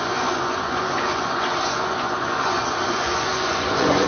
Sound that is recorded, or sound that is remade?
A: remade